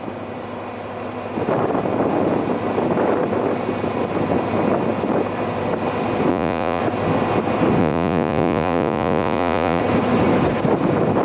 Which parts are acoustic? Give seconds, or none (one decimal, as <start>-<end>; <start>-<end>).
0.0-6.3; 6.8-7.8; 9.8-11.2